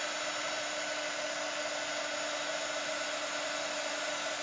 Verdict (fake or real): real